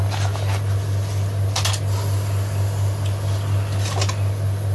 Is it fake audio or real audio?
real